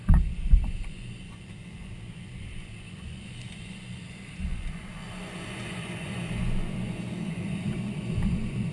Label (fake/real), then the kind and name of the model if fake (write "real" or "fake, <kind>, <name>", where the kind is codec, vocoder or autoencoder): fake, vocoder, Vocos